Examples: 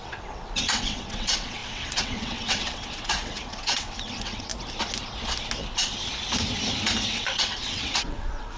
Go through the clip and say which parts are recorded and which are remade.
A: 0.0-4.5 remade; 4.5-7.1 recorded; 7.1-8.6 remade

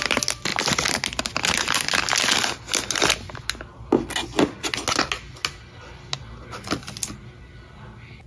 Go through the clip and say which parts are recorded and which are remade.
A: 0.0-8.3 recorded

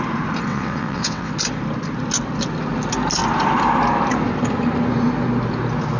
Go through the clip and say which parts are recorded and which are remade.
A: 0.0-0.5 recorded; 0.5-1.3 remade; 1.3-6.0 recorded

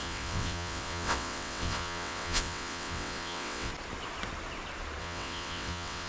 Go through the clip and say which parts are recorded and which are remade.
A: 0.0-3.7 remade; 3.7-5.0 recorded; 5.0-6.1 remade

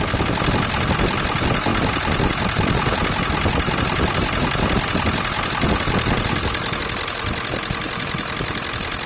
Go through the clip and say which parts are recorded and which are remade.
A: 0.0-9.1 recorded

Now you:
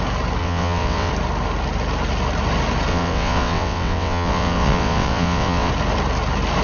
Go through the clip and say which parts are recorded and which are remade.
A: 0.0-0.4 recorded; 0.4-1.1 remade; 1.1-2.9 recorded; 2.9-5.7 remade; 5.7-6.6 recorded